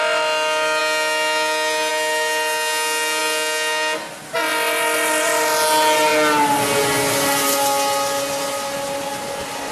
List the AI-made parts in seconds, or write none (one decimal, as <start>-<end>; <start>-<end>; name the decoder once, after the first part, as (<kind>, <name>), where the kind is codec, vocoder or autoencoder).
none